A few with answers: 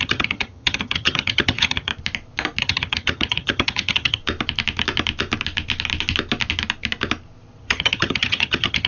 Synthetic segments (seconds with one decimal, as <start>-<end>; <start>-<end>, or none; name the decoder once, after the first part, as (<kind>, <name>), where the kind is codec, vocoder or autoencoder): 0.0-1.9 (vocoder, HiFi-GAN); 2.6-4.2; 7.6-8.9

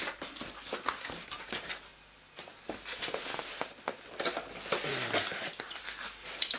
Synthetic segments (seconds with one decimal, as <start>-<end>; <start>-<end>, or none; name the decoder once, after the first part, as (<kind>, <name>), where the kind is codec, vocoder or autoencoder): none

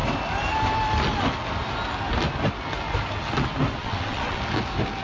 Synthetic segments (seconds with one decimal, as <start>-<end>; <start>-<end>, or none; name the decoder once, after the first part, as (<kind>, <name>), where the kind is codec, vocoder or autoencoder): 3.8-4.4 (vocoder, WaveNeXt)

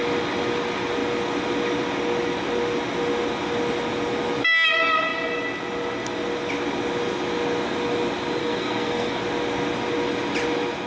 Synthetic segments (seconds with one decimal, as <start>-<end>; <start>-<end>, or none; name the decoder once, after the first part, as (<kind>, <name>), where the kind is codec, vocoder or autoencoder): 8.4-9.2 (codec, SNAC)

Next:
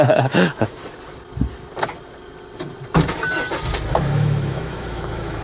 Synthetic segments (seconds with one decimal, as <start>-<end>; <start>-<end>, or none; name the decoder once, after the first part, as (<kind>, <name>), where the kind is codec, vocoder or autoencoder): 0.0-0.8 (autoencoder, DAC-VAE); 3.9-5.4